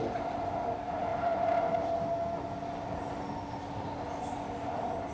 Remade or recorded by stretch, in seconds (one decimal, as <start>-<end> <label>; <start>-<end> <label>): 0.0-5.1 recorded